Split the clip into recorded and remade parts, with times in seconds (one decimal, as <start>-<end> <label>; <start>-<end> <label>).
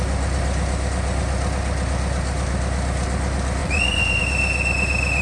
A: 0.0-3.6 recorded; 3.6-4.2 remade; 4.2-5.2 recorded